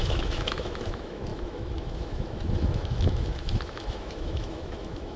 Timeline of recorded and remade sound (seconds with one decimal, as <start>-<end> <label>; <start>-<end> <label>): 0.0-5.2 remade